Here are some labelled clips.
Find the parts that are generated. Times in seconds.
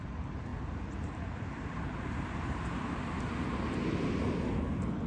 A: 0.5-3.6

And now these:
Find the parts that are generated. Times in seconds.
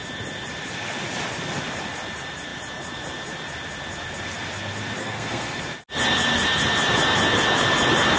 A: 5.0-5.6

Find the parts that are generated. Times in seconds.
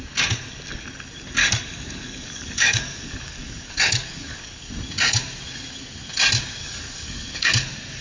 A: 1.4-4.7; 6.6-7.5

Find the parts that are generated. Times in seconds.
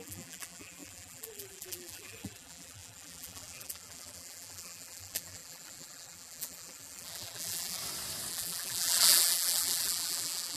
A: 0.0-7.8; 8.3-10.6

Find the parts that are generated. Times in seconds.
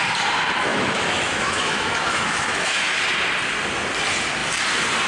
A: 0.7-3.0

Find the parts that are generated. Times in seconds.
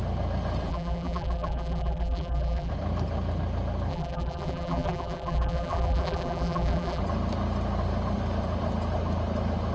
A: 0.7-2.7; 3.9-7.0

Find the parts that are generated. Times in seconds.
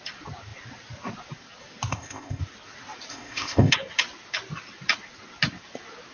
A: 1.9-2.4; 3.1-3.7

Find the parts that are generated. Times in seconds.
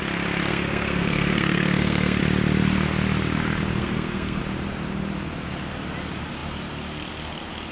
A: 0.5-2.2; 3.8-4.4